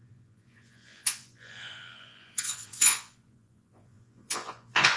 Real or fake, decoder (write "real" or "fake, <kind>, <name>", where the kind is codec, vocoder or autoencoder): fake, vocoder, Vocos